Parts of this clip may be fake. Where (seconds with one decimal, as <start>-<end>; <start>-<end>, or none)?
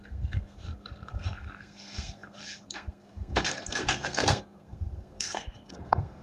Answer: 0.0-6.2